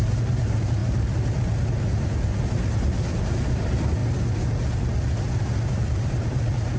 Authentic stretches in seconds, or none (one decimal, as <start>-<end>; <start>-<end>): 0.8-2.5; 4.0-5.7